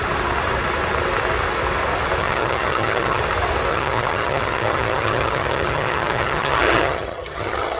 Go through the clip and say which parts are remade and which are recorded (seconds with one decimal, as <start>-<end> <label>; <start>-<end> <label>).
0.0-2.2 recorded; 2.2-3.2 remade; 3.2-3.7 recorded; 3.7-7.8 remade